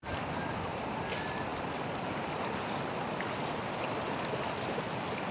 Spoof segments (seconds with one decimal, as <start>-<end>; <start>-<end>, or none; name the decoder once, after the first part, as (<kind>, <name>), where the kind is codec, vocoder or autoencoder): none